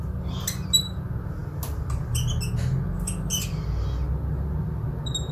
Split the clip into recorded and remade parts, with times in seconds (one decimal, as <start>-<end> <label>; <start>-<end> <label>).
0.0-5.3 recorded